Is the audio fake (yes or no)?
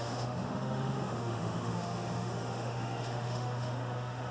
yes